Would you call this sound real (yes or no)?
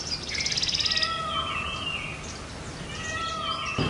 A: yes